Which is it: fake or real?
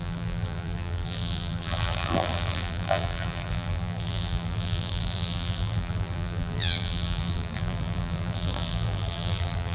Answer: fake